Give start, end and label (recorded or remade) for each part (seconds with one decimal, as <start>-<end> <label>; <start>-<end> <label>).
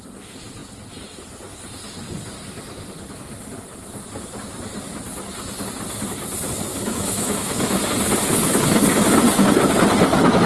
0.0-6.7 recorded; 6.7-7.8 remade; 7.8-10.5 recorded